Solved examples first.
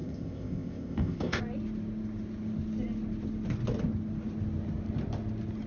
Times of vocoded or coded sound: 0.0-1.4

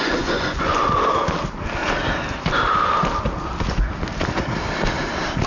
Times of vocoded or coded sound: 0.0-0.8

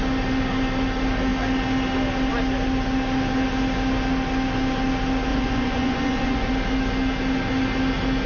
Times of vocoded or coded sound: 5.3-6.5